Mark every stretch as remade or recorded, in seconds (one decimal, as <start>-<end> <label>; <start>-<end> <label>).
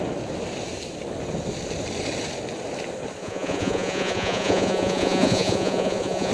0.0-3.2 recorded; 3.2-6.3 remade